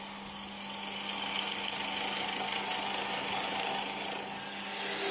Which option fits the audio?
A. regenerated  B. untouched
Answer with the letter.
B